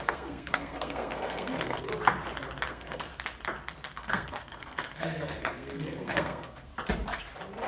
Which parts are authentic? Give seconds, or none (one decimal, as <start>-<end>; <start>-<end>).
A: 1.9-2.7; 3.1-4.0; 6.7-7.7